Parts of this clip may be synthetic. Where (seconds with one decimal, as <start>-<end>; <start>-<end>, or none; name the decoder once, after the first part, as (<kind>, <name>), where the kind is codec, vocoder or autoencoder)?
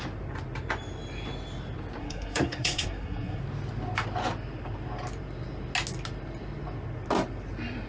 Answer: 2.0-3.4 (codec, SNAC)